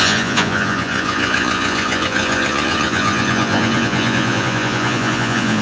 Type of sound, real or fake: fake